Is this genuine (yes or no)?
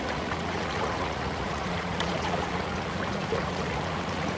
no